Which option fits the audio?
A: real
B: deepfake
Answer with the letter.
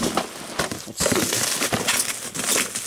A